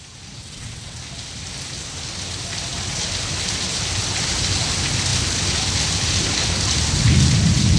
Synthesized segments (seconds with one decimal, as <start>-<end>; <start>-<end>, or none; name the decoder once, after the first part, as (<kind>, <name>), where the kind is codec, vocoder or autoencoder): 0.4-1.0 (vocoder, WaveNeXt)